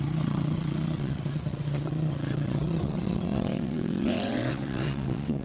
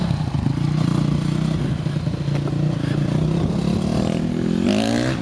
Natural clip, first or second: second